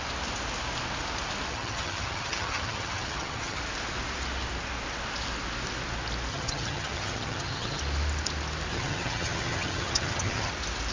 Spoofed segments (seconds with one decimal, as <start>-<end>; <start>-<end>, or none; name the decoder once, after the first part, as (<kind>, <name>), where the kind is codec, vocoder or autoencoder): 1.5-3.6 (vocoder, HiFi-GAN); 6.3-7.8; 8.7-10.5